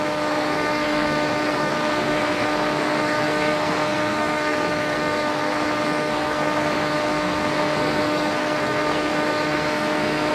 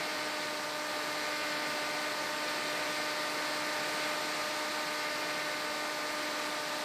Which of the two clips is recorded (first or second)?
second